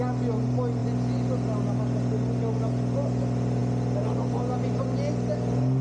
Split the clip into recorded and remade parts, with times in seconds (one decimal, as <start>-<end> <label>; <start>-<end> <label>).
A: 0.0-5.8 recorded